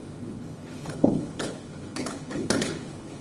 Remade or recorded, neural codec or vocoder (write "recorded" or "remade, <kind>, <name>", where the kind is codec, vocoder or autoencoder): remade, codec, HILCodec